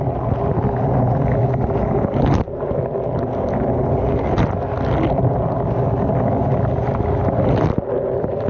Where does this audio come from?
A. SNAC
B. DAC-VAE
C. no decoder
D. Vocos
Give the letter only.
C